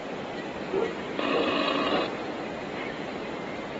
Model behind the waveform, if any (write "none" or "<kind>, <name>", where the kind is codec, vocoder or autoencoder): none